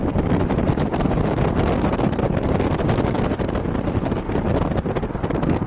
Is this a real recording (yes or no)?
yes